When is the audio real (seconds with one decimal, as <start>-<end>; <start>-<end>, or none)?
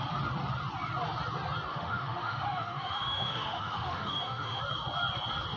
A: 0.0-1.7; 4.6-5.6